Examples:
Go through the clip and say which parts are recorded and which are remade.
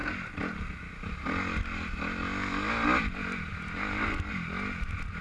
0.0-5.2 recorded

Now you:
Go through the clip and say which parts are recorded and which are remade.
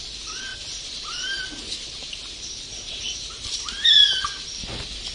0.0-0.5 recorded; 0.5-3.6 remade; 3.6-5.1 recorded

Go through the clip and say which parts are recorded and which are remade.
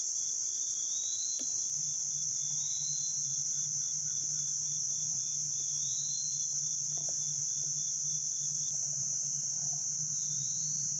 0.0-3.3 remade; 3.3-4.8 recorded; 4.8-11.0 remade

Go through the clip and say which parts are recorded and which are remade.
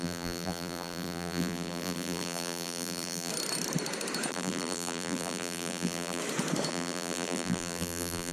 0.0-3.3 remade; 3.3-4.3 recorded; 4.3-6.2 remade; 6.2-6.7 recorded; 6.7-8.3 remade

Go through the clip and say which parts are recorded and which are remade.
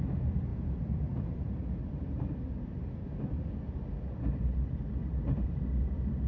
0.0-0.5 recorded; 0.5-2.8 remade; 2.8-5.0 recorded; 5.0-5.6 remade; 5.6-6.3 recorded